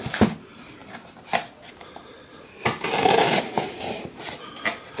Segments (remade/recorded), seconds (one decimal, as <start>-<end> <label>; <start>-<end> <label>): 0.0-5.0 recorded